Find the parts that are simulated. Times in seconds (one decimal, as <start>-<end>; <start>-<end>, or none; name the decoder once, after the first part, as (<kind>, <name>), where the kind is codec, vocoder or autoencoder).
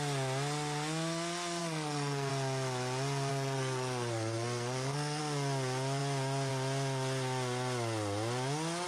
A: 1.6-2.3 (codec, SNAC); 3.3-5.2